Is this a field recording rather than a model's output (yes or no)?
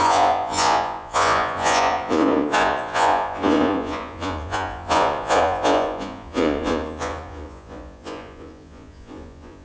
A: no